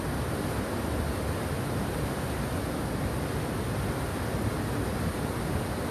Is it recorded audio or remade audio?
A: recorded